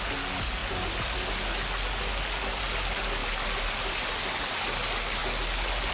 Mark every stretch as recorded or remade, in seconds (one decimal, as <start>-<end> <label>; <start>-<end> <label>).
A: 0.0-5.9 recorded